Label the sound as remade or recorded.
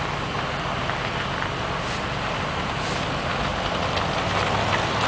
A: recorded